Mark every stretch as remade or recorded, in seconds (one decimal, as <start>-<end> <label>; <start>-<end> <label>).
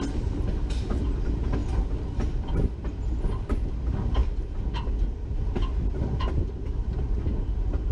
0.0-7.9 recorded